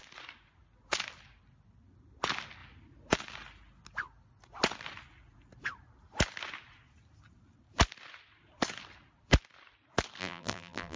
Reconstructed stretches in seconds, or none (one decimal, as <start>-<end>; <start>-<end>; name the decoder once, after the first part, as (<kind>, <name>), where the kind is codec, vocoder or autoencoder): 10.2-11.0 (vocoder, BigVGAN v2)